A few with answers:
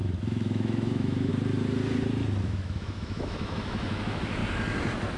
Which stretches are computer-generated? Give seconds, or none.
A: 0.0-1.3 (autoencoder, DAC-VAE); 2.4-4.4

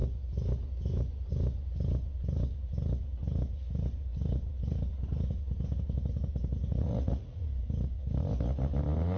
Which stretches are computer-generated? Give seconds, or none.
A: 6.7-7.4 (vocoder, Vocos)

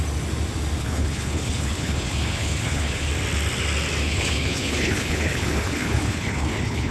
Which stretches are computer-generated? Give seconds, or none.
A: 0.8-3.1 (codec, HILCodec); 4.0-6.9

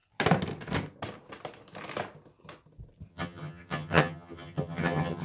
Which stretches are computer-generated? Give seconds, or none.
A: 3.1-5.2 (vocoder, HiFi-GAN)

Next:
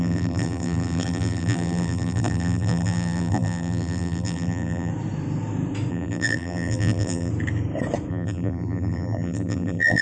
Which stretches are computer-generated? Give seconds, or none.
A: 0.0-4.9 (vocoder, BigVGAN v2); 5.9-7.3; 8.1-10.0

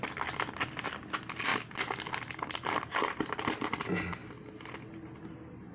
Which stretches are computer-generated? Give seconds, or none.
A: none

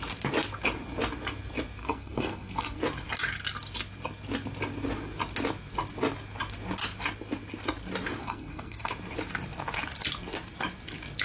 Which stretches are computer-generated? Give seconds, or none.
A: 1.8-2.8 (codec, SNAC); 8.2-8.9